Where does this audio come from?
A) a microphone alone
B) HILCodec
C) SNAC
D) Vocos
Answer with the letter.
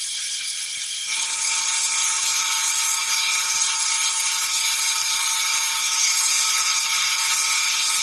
B